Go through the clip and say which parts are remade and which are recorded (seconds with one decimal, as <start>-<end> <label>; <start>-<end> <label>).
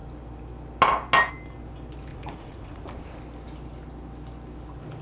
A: 0.0-2.1 recorded; 2.1-2.8 remade; 2.8-5.0 recorded